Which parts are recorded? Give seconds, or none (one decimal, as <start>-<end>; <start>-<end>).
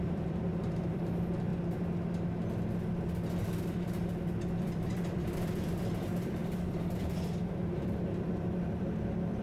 1.5-4.6; 6.4-7.0